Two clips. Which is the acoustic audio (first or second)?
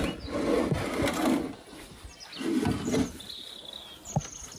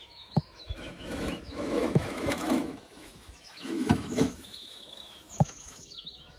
first